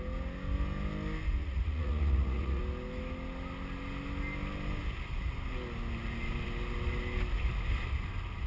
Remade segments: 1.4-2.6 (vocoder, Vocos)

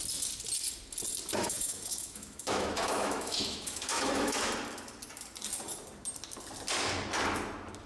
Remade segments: 1.4-4.5 (autoencoder, DAC-VAE)

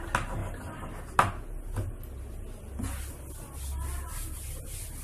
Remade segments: none

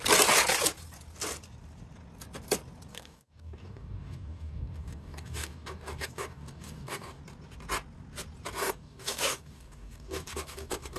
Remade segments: 2.9-7.2 (codec, DAC); 8.6-11.0

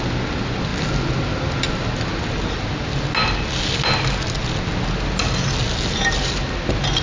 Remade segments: none

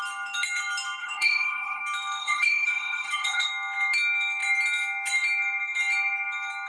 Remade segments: 1.0-1.8 (codec, HILCodec); 2.2-3.5

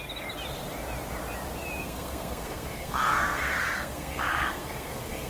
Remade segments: 1.8-5.3 (codec, SNAC)

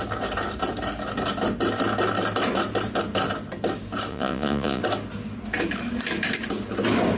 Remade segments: 4.1-4.8 (vocoder, Vocos)